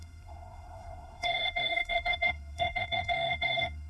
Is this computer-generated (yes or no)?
yes